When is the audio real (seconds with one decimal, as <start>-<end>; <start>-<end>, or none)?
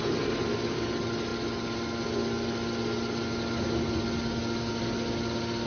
0.0-5.7